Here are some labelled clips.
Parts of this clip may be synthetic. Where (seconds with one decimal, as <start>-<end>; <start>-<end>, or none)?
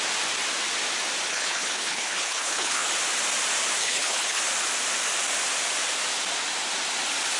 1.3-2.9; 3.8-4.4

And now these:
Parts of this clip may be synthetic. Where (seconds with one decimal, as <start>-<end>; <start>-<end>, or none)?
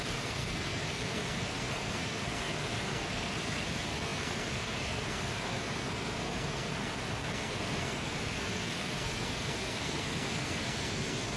0.0-11.4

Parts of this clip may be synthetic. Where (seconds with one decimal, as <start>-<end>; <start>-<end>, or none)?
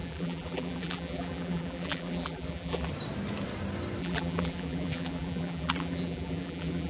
0.0-2.9; 4.0-6.9